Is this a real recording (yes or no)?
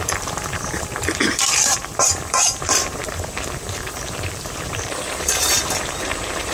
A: no